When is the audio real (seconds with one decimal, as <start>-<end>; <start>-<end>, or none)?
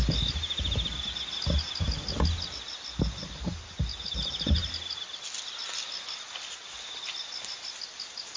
0.0-8.4